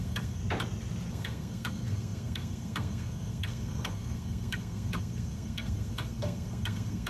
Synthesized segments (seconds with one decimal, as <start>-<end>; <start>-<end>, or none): 0.0-0.4; 1.1-7.1